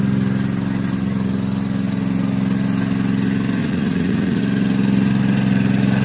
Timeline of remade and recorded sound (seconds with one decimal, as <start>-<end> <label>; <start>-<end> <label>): 0.0-3.6 recorded; 3.6-4.4 remade; 4.4-6.0 recorded

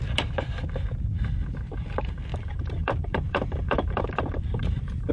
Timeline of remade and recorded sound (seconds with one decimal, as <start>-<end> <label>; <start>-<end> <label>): 0.0-2.3 recorded; 2.3-5.1 remade

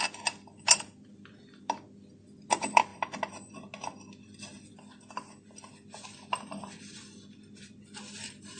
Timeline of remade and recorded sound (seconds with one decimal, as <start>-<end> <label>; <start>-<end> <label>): 0.0-8.6 recorded

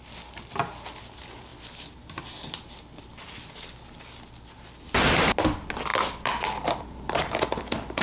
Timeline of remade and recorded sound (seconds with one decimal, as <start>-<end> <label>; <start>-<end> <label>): 0.0-5.9 recorded; 5.9-7.4 remade; 7.4-8.0 recorded

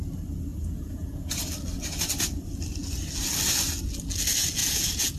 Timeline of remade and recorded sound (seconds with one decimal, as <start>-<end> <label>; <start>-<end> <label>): 0.0-0.5 recorded; 0.5-1.4 remade; 1.4-4.6 recorded; 4.6-5.2 remade

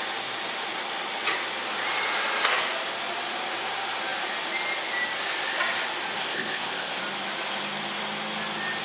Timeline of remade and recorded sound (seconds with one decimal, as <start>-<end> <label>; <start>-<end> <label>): 0.0-6.2 recorded; 6.2-7.0 remade; 7.0-8.8 recorded

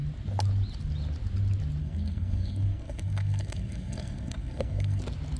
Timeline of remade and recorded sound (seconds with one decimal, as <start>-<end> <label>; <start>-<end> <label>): 0.0-1.8 recorded; 1.8-5.0 remade; 5.0-5.4 recorded